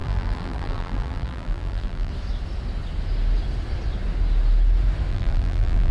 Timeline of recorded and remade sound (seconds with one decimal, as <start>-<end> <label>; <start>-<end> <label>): 0.0-2.1 remade; 2.1-5.1 recorded; 5.1-5.9 remade